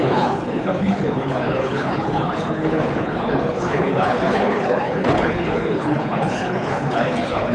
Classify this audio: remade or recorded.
remade